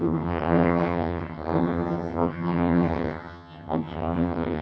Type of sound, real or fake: fake